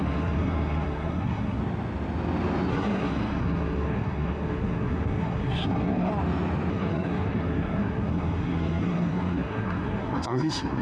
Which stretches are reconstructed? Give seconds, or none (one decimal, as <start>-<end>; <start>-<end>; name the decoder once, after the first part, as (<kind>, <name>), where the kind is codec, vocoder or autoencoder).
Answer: 0.0-1.6 (codec, SNAC); 2.7-6.1; 6.7-10.8

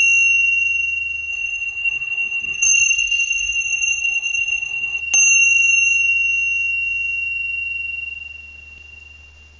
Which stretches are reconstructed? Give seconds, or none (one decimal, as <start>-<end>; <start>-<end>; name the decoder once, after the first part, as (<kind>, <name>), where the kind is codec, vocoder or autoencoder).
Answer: 1.3-5.0 (codec, SNAC)